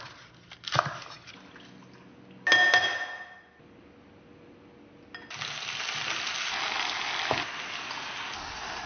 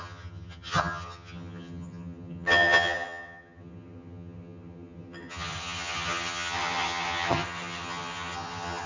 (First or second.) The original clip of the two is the first